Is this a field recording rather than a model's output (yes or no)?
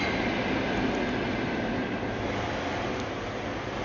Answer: yes